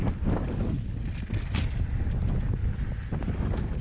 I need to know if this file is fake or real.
real